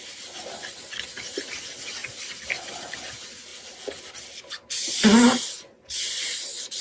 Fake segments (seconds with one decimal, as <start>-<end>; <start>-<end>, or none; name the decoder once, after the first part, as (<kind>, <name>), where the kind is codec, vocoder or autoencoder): 3.5-4.0 (vocoder, BigVGAN v2)